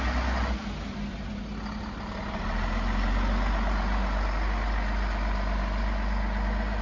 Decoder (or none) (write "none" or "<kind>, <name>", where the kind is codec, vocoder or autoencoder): none